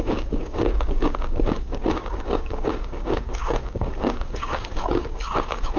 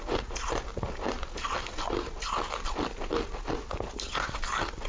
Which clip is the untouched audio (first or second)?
second